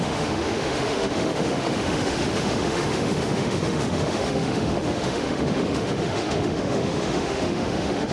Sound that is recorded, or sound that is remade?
remade